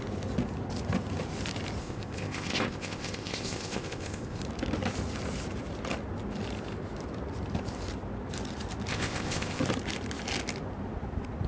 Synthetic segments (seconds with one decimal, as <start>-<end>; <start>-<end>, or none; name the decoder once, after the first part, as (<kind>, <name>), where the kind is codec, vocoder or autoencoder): 1.8-4.4 (codec, ZipCodec); 8.9-9.6